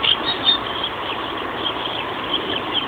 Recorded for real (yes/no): no